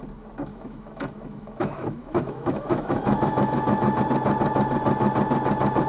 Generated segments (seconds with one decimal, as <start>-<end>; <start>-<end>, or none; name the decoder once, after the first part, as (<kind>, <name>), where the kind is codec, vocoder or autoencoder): 0.5-4.0 (autoencoder, DAC-VAE)